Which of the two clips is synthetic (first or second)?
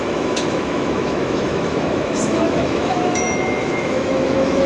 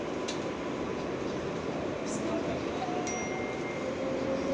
first